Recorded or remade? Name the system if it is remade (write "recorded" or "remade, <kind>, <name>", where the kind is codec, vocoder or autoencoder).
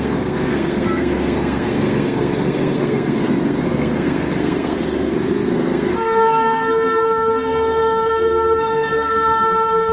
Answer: remade, codec, SNAC